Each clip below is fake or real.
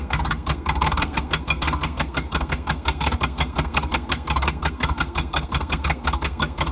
fake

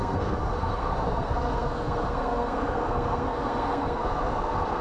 fake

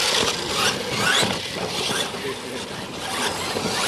real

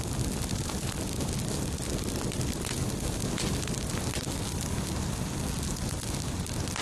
real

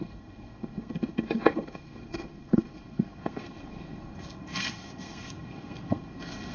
fake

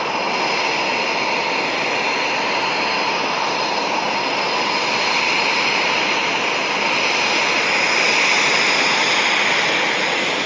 real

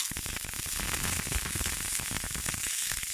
fake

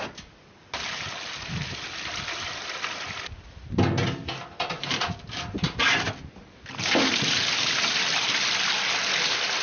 real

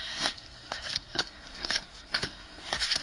fake